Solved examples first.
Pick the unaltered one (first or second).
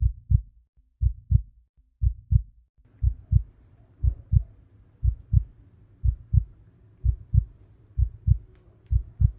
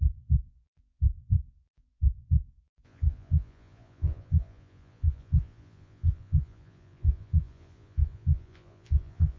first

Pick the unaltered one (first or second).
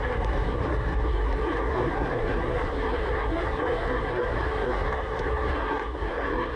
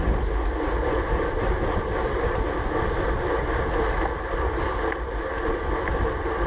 second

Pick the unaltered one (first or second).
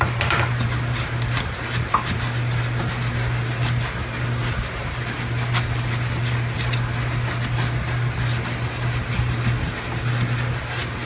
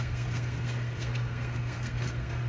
first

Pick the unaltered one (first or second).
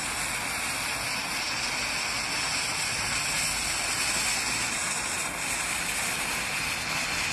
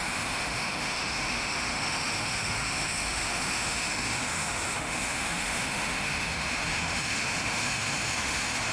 first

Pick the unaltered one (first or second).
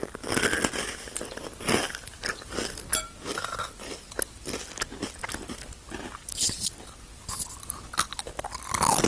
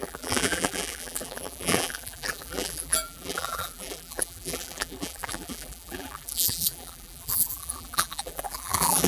first